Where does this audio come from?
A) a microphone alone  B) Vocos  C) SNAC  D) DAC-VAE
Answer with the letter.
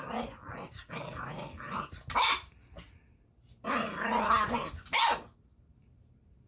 A